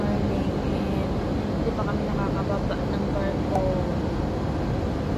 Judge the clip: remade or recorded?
recorded